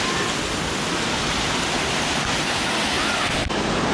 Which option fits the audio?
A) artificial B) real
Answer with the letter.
B